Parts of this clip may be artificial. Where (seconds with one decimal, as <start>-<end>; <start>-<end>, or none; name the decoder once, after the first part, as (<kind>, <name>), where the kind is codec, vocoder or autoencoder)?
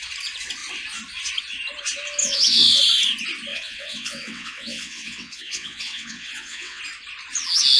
2.2-2.8 (vocoder, WaveNeXt); 3.5-6.8